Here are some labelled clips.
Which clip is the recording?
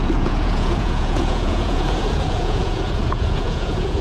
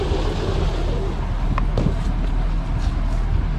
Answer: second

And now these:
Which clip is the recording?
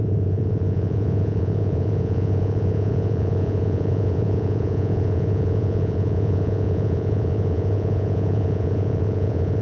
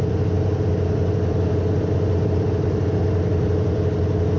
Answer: second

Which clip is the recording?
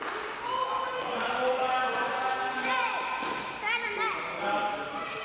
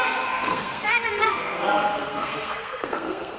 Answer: first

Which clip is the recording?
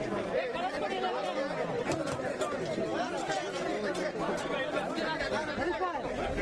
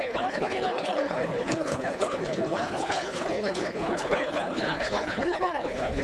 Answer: first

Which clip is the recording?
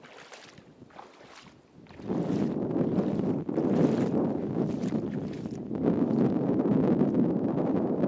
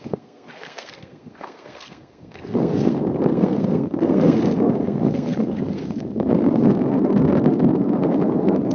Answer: first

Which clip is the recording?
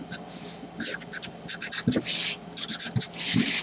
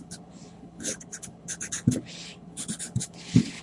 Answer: first